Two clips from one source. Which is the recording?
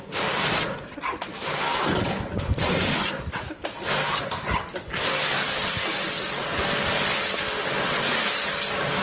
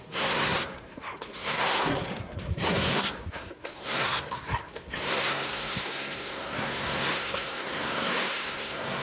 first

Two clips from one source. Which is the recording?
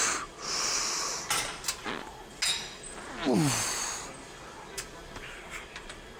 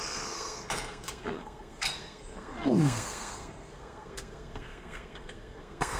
first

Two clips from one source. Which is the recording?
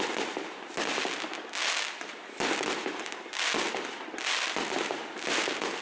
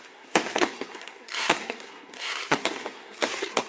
first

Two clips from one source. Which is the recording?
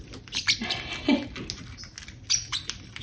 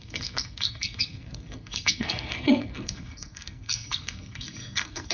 first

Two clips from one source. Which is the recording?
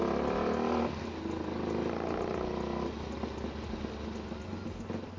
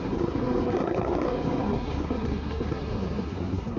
first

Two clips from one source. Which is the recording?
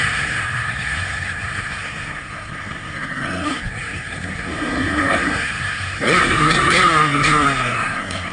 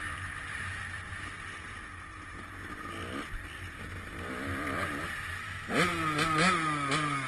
second